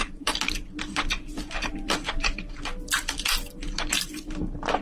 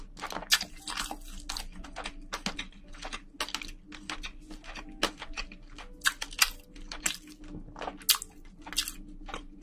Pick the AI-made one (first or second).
first